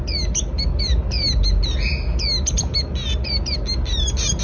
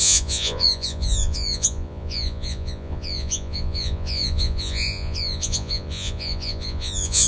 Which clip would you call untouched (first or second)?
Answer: first